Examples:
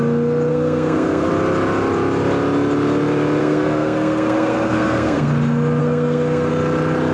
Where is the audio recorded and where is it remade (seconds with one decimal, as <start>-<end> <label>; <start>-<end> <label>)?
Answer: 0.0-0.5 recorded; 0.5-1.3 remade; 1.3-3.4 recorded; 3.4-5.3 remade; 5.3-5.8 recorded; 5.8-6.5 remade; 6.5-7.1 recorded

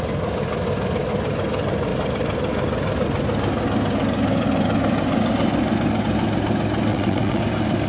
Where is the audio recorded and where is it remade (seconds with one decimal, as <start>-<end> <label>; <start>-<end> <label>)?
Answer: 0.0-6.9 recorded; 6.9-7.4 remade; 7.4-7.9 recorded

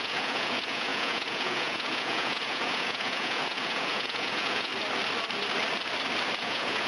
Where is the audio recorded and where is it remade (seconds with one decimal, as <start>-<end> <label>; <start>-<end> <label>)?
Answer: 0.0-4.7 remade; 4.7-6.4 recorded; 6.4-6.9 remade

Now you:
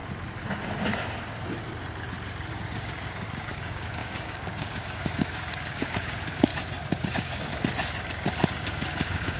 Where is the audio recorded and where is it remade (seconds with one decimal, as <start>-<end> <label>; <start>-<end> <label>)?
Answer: 0.0-2.5 recorded; 2.5-6.5 remade; 6.5-7.1 recorded; 7.1-7.5 remade; 7.5-8.6 recorded; 8.6-9.4 remade